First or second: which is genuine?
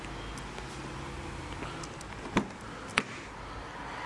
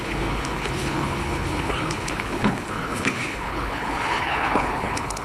first